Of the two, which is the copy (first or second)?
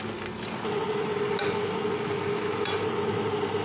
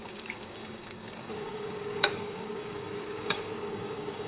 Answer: second